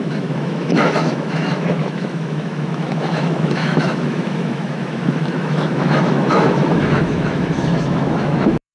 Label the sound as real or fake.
fake